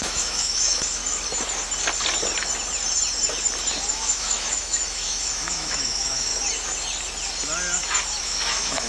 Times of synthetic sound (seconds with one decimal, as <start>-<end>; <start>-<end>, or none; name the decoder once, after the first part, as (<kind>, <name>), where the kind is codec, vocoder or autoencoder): 0.0-1.0 (autoencoder, DAC-VAE); 3.9-6.3; 8.2-8.9